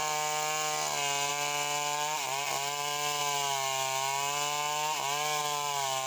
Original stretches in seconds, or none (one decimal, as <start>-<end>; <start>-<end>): 0.0-1.3; 3.2-5.4